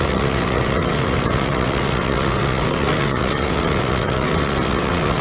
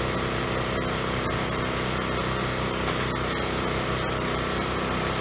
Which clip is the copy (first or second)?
first